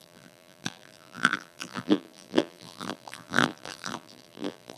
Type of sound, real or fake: fake